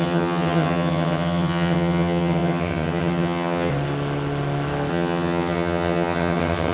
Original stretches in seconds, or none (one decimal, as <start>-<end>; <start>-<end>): 3.7-4.9